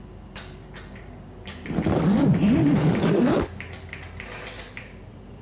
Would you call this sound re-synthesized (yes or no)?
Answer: no